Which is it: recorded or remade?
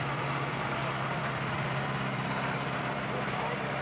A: remade